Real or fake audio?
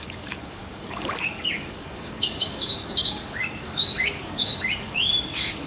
fake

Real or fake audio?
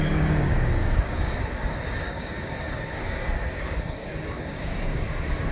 fake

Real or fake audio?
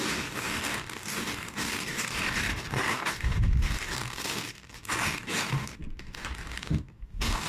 fake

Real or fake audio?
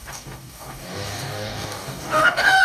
fake